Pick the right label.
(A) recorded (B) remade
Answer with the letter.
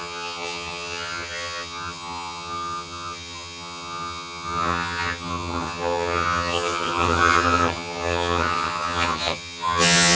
B